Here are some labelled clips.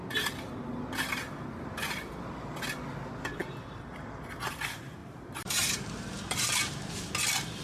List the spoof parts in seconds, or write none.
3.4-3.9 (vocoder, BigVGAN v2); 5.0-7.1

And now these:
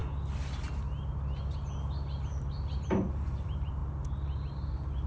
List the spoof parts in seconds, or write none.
3.1-3.8 (vocoder, BigVGAN v2)

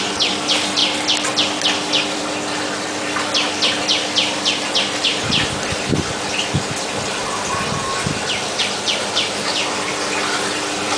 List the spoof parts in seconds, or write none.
0.0-11.0 (vocoder, BigVGAN v2)

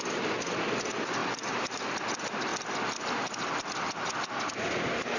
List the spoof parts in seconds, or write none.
1.2-2.0 (vocoder, BigVGAN v2); 2.5-5.2

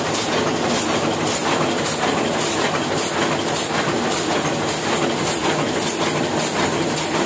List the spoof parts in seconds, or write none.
none

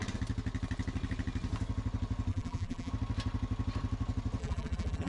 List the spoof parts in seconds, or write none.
2.3-2.9 (vocoder, BigVGAN v2); 4.4-5.1